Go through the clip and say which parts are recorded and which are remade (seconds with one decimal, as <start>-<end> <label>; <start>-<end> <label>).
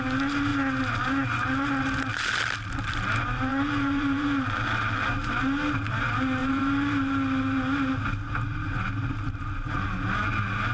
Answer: 0.0-3.5 recorded; 3.5-5.1 remade; 5.1-6.4 recorded; 6.4-7.1 remade; 7.1-10.7 recorded